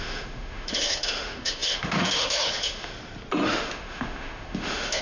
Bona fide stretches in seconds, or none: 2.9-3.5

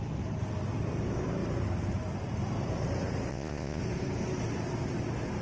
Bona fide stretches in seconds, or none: 0.0-3.3; 3.8-5.4

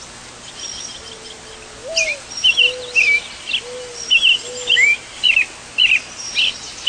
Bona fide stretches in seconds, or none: 0.0-6.9

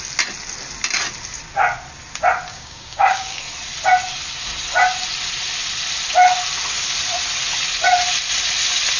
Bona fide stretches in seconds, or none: 0.0-2.5; 3.4-9.0

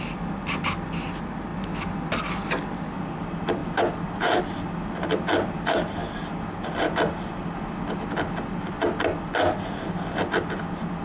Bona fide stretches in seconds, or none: 0.0-3.6; 4.4-11.0

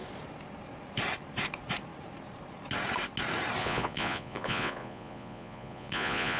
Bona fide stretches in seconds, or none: 0.0-3.6

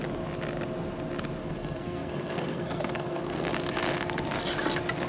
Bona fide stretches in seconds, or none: 0.0-1.4; 3.5-5.1